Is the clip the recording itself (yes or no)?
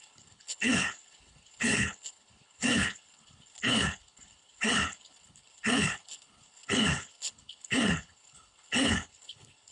no